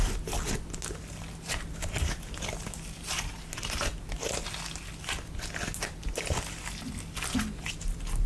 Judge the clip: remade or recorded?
recorded